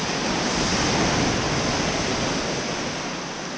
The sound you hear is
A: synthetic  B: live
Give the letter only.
B